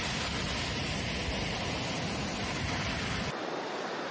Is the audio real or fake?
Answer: real